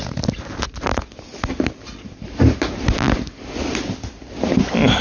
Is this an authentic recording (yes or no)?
yes